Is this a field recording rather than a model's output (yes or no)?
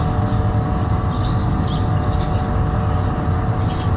yes